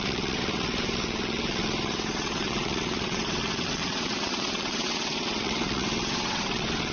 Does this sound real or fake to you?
fake